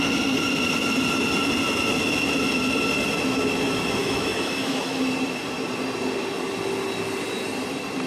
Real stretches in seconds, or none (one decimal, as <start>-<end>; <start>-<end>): 0.0-4.0; 5.0-8.1